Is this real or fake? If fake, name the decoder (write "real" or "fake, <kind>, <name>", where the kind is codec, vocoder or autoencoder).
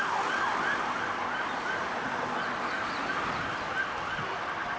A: real